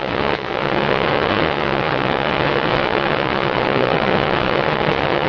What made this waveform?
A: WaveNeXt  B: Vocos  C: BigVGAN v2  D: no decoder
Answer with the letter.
A